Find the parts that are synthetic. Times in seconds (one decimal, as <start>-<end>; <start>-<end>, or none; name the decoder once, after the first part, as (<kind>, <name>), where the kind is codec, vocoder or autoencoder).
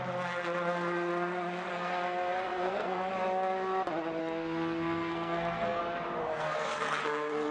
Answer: 1.7-3.1 (codec, SNAC); 4.2-5.8; 6.2-7.5